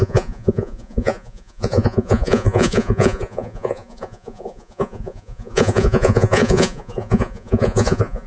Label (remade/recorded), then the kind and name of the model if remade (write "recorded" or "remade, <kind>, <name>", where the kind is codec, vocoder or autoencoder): remade, vocoder, Vocos